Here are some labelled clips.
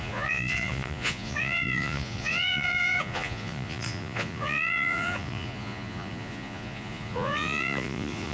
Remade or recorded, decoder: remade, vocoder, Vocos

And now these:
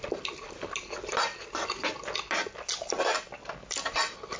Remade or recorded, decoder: recorded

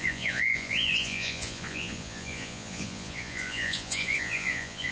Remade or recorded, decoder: remade, vocoder, Vocos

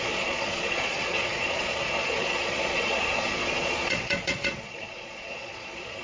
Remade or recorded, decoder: remade, vocoder, Vocos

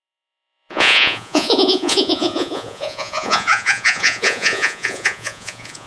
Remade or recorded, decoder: remade, vocoder, Vocos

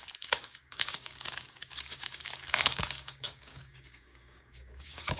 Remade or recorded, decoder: remade, codec, DAC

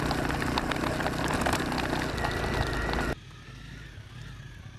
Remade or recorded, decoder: recorded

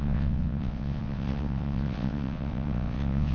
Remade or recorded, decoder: remade, vocoder, WaveNeXt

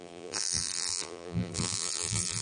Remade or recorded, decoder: remade, vocoder, BigVGAN v2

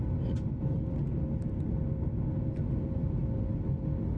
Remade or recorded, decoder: recorded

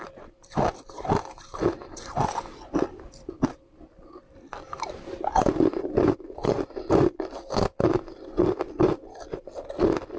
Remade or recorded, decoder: remade, vocoder, BigVGAN v2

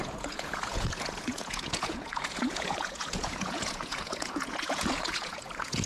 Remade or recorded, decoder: remade, vocoder, Vocos